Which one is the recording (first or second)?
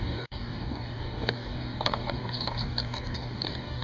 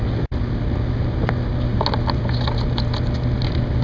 second